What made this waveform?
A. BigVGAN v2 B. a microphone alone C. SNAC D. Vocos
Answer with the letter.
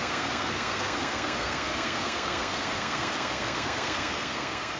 C